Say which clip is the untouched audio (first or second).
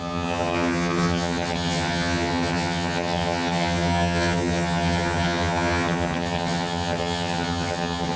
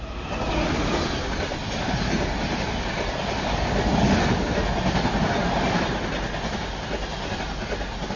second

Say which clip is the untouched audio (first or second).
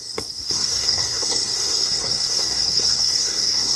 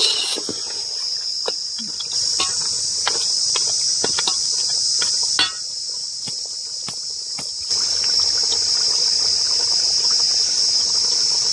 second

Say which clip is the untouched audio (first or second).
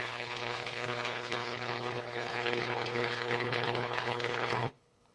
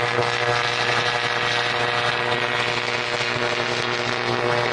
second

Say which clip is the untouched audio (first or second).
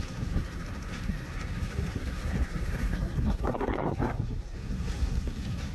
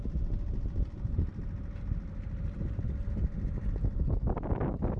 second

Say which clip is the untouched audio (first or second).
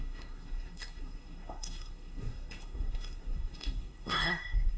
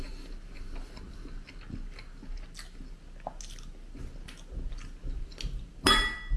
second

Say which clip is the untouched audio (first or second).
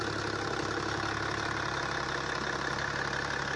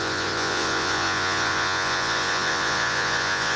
first